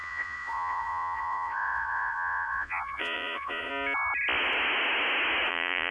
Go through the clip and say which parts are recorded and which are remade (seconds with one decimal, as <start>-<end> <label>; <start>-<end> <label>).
0.0-3.7 remade; 3.7-5.5 recorded; 5.5-5.9 remade